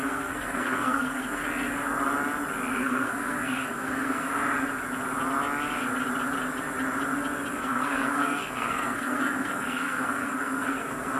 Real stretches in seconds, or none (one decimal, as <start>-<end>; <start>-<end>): 1.4-2.7; 4.3-7.5